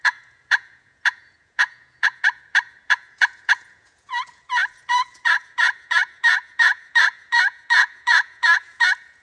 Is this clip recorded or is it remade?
remade